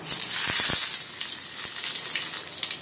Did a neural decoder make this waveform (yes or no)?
no